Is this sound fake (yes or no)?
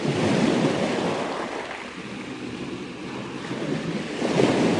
no